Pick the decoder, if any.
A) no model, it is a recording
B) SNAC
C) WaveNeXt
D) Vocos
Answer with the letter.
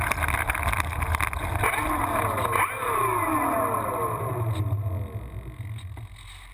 A